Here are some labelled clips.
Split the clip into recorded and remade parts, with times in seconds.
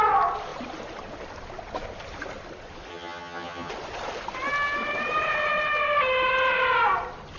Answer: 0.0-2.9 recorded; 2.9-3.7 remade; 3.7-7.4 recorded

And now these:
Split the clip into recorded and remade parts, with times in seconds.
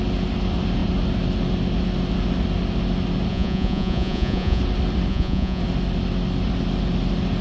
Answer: 0.0-3.3 recorded; 3.3-4.6 remade; 4.6-5.1 recorded; 5.1-5.6 remade; 5.6-7.4 recorded